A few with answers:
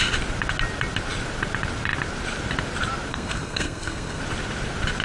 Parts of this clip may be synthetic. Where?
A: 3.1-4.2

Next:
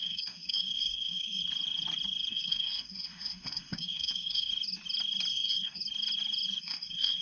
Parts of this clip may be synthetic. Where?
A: 0.0-1.4; 2.3-4.5; 5.3-5.8; 6.6-7.2

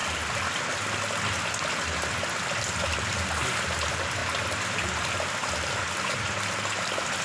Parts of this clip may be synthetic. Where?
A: none

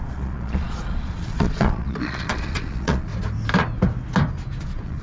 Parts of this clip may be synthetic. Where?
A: 0.0-3.1; 4.6-5.0